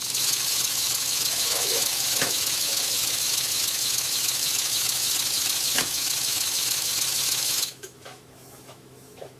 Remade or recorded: remade